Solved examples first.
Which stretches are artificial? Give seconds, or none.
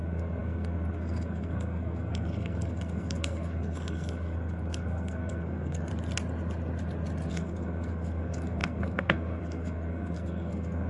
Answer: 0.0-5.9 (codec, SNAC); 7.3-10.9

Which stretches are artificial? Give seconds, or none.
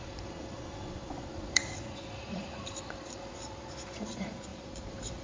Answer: 0.0-5.2 (vocoder, Vocos)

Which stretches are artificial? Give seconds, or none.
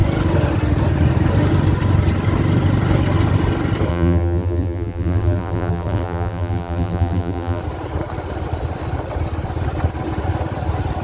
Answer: 3.9-7.6 (vocoder, BigVGAN v2)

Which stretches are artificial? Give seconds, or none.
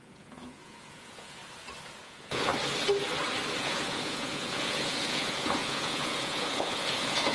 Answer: 0.0-1.4 (vocoder, Vocos); 2.0-2.5; 3.6-7.3